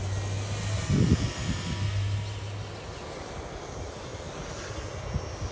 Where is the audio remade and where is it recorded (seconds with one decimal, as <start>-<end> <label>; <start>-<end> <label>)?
0.0-5.5 recorded